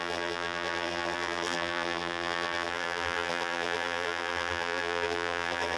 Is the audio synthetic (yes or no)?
yes